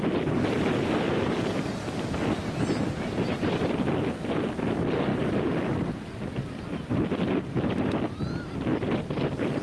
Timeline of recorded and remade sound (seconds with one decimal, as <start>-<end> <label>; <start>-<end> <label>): 0.0-9.6 recorded